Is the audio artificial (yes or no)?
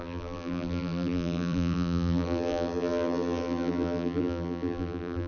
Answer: yes